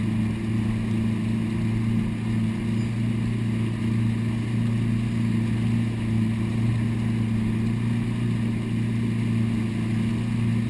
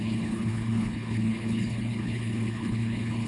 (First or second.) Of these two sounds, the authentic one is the first